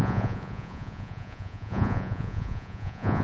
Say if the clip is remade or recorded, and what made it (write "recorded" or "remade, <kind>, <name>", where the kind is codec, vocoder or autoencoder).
remade, vocoder, Vocos